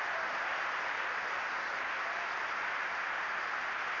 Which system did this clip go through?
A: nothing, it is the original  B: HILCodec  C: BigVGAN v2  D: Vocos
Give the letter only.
A